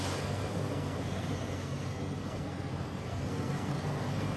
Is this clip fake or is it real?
fake